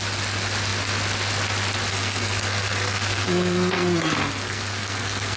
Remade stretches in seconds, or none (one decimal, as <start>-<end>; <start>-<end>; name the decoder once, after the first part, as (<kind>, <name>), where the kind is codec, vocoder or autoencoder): 1.9-5.4 (codec, SNAC)